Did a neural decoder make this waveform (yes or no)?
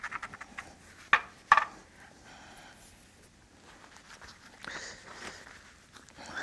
no